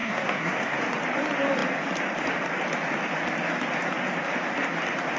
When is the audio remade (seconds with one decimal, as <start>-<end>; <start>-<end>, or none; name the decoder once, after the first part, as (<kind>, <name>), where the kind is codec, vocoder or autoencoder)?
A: 0.0-0.8 (codec, SNAC)